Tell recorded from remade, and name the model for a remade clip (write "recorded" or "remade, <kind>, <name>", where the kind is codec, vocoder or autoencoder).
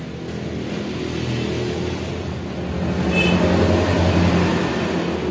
recorded